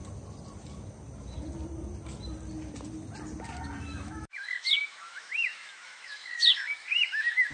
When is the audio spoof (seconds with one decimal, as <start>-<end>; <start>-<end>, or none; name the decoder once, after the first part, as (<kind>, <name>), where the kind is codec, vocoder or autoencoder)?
3.8-7.5 (autoencoder, DAC-VAE)